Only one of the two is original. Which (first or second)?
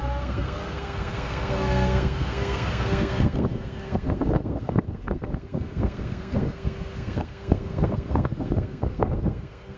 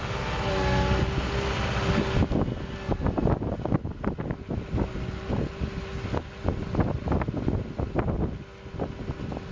second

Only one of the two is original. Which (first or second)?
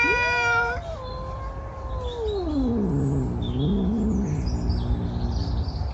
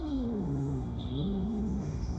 first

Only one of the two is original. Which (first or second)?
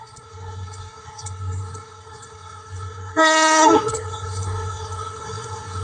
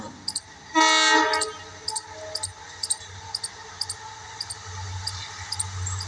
second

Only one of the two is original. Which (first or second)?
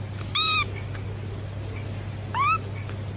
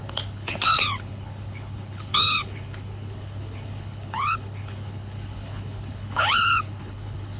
first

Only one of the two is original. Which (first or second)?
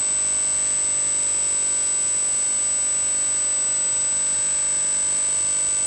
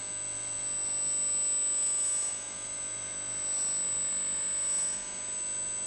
first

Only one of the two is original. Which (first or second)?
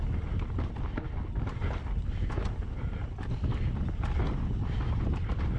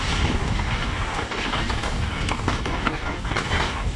first